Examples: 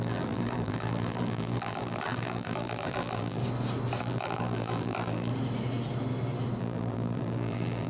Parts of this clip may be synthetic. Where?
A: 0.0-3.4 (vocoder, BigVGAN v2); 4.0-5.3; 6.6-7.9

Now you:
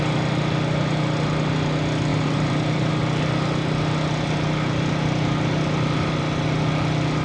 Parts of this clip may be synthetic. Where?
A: 2.1-2.9 (vocoder, BigVGAN v2)

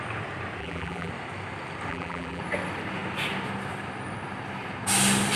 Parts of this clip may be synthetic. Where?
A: 0.6-1.1 (vocoder, BigVGAN v2); 1.9-2.4

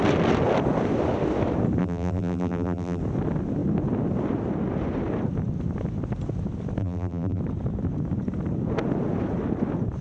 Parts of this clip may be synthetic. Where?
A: 1.8-3.0 (vocoder, BigVGAN v2); 6.8-7.4

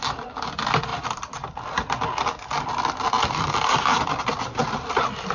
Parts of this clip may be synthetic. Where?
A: 0.9-4.1 (vocoder, BigVGAN v2)

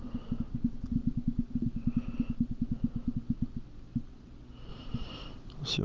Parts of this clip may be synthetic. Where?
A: 4.7-5.8 (vocoder, BigVGAN v2)

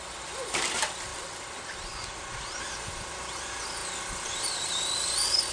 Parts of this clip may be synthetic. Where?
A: 0.0-1.1 (vocoder, BigVGAN v2); 2.6-3.8

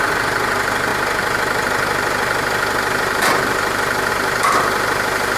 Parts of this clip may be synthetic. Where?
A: none